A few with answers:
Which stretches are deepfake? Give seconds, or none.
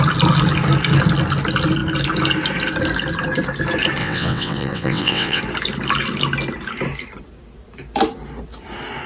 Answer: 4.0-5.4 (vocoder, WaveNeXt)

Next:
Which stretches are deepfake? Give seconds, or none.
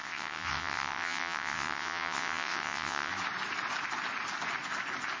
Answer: 0.0-3.1 (vocoder, WaveNeXt)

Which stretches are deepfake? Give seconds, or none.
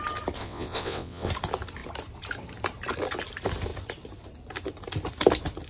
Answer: 0.4-1.3 (vocoder, WaveNeXt)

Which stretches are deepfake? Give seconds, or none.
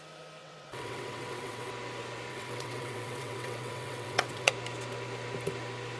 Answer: 0.4-1.7 (vocoder, WaveNeXt); 2.3-4.5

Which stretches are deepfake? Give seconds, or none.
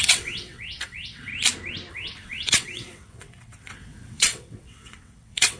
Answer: 0.0-1.3 (vocoder, WaveNeXt); 1.9-5.6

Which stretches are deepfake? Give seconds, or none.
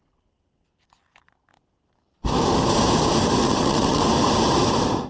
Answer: 3.4-4.0 (vocoder, WaveNeXt)